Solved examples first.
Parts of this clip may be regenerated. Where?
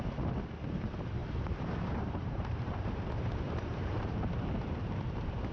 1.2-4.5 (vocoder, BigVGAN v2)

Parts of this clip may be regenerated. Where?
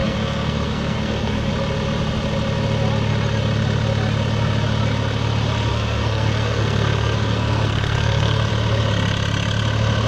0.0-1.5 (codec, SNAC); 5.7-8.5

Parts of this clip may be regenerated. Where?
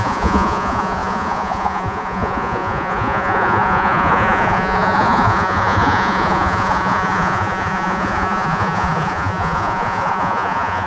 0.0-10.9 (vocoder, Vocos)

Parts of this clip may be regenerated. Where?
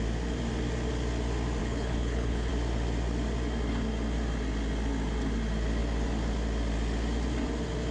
1.6-2.5 (codec, HILCodec)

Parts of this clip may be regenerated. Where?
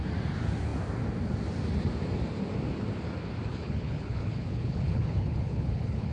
3.5-6.1 (codec, HILCodec)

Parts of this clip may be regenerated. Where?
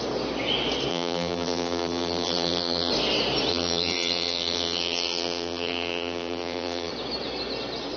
0.9-2.9 (vocoder, BigVGAN v2); 3.5-6.9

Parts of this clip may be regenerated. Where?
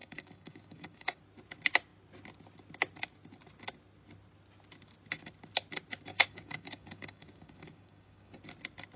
0.0-1.2 (codec, DAC); 6.1-8.4